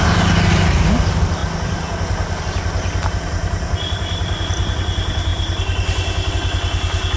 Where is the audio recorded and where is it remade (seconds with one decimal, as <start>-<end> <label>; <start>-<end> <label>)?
0.0-7.2 recorded